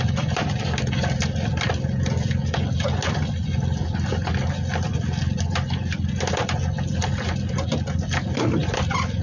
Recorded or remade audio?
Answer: recorded